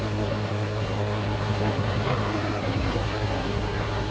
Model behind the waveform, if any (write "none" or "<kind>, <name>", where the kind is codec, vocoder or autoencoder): codec, SNAC